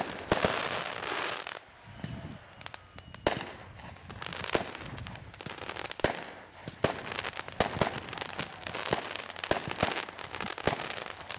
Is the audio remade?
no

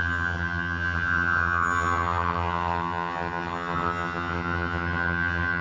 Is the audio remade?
yes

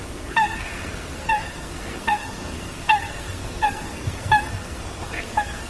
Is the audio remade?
yes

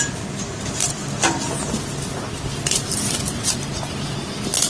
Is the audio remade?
no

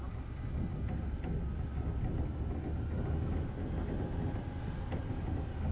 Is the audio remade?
no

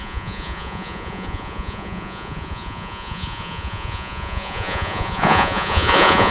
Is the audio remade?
yes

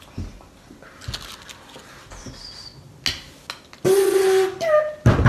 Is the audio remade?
no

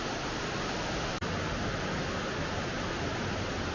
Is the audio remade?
no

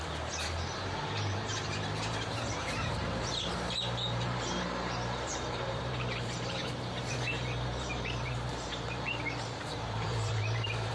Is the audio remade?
yes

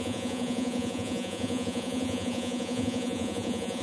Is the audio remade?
yes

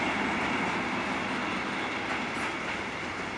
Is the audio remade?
no